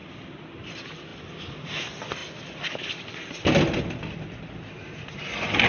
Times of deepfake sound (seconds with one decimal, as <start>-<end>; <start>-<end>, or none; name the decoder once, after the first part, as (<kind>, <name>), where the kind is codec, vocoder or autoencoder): none